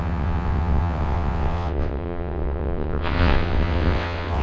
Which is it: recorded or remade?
remade